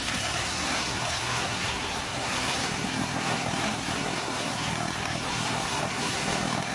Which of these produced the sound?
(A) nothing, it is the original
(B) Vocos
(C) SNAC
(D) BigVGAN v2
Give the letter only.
C